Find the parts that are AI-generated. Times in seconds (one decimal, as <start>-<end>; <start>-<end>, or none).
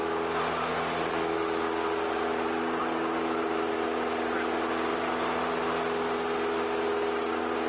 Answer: none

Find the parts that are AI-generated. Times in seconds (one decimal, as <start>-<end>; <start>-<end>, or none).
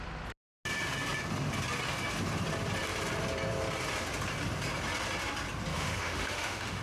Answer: 5.7-6.8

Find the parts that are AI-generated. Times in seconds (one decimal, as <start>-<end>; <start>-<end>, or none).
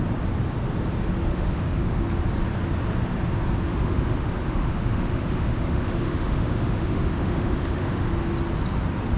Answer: 1.3-2.0; 3.7-8.1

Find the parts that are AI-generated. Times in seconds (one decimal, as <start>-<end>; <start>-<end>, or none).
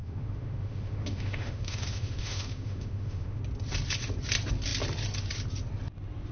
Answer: 0.0-3.4